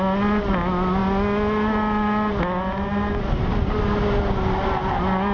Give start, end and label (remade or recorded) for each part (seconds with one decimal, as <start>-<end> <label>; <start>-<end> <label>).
0.0-5.3 recorded